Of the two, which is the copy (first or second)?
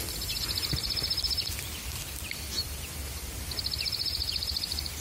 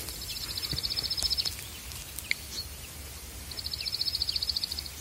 first